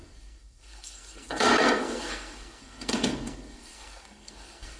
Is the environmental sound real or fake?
fake